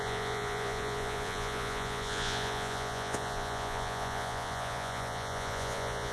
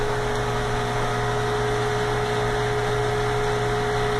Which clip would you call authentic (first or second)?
second